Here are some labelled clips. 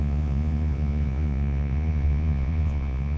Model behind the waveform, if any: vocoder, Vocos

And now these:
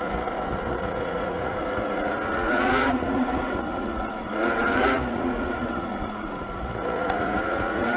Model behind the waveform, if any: vocoder, Vocos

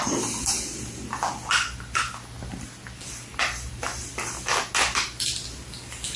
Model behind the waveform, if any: none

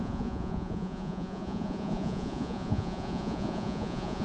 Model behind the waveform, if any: vocoder, Vocos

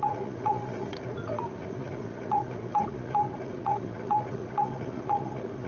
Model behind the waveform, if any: vocoder, Vocos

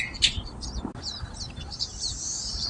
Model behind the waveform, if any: none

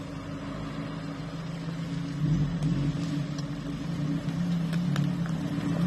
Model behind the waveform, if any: none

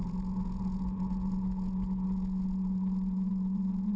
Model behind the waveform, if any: vocoder, Vocos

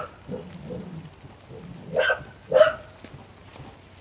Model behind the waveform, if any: none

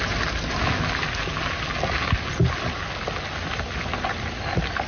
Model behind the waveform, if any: none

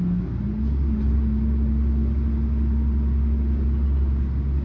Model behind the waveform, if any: none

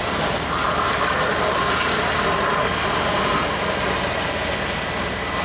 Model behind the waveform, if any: none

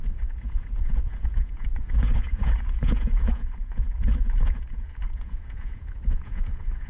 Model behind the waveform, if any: vocoder, Vocos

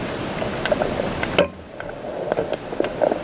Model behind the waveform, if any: none